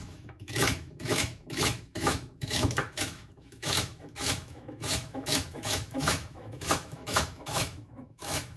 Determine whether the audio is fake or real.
fake